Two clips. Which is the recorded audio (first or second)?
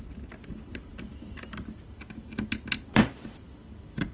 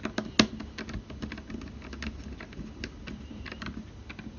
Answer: second